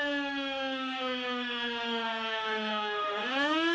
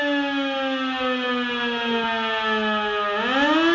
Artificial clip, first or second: first